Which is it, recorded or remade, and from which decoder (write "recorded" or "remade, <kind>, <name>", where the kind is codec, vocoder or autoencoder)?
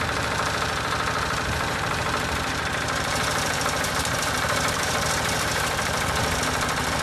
remade, vocoder, BigVGAN v2